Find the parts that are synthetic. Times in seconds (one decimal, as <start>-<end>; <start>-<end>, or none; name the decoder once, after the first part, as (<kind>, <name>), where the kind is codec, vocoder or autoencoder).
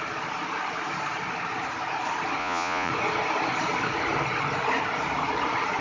2.4-2.9 (vocoder, Vocos)